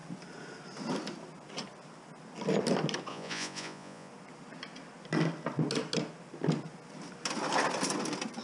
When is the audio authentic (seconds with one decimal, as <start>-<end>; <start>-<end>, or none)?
0.0-3.1; 4.1-8.4